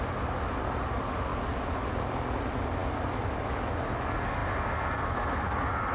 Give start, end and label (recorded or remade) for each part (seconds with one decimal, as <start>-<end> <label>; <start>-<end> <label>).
0.0-5.9 recorded